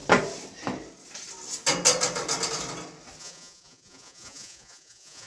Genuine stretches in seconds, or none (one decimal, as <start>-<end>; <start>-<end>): 0.0-3.2